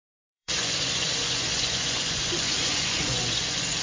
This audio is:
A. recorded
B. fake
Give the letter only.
B